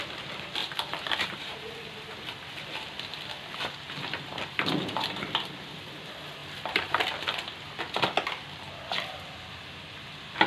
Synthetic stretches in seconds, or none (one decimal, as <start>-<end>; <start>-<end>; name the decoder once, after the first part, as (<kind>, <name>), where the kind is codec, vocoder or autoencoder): 0.6-1.7 (vocoder, BigVGAN v2); 6.4-7.0